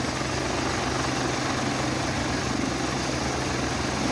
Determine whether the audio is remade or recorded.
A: recorded